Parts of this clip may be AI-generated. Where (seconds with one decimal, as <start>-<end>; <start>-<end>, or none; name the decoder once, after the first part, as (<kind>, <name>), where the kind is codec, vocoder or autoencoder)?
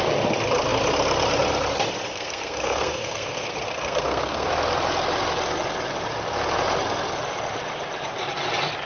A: 2.1-4.5 (codec, SNAC)